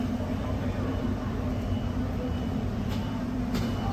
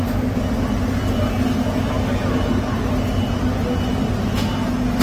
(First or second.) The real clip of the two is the second